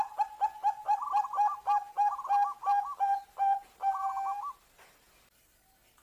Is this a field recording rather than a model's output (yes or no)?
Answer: yes